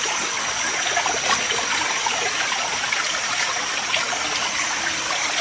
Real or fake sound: real